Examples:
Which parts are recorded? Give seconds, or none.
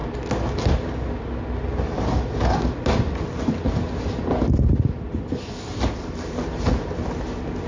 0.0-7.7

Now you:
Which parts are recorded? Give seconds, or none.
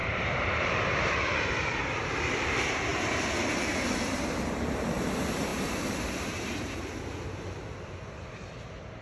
1.8-2.9; 5.1-5.5; 7.0-9.0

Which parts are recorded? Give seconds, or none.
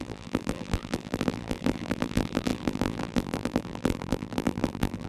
none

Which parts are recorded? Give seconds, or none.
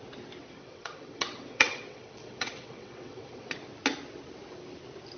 0.0-0.4; 3.5-5.2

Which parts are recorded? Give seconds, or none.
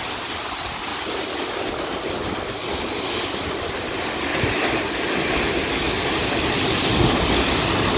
0.0-8.0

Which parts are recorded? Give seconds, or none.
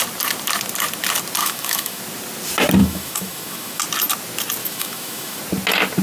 0.0-1.4; 2.0-2.8; 3.8-4.6; 5.4-6.0